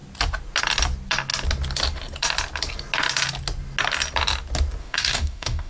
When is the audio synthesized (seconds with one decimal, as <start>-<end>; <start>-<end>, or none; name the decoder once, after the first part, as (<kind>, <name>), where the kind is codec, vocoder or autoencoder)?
4.8-5.7 (autoencoder, DAC-VAE)